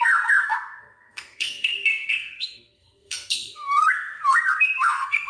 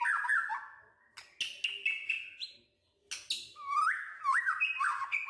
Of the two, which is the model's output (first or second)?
first